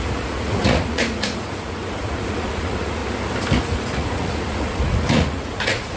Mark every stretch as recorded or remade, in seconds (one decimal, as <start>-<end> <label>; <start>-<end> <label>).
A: 0.0-3.0 remade; 3.0-3.6 recorded; 3.6-6.0 remade